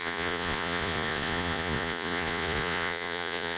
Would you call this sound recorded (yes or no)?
no